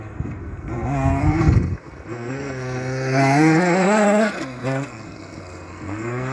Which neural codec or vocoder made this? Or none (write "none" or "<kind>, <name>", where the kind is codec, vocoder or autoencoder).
codec, SNAC